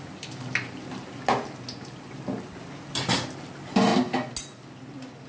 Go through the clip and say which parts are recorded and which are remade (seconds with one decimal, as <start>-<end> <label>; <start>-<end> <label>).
0.0-5.3 recorded